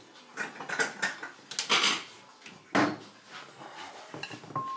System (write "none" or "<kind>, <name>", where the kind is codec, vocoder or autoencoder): none